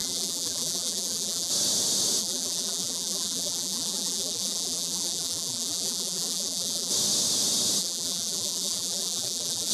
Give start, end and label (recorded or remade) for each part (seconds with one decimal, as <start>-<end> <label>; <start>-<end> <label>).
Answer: 0.0-1.5 remade; 1.5-2.2 recorded; 2.2-6.9 remade; 6.9-7.8 recorded; 7.8-9.7 remade